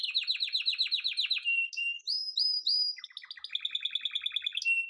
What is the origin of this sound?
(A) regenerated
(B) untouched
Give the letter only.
B